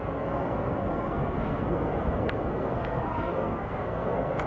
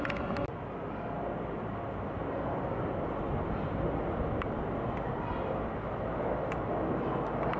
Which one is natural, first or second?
second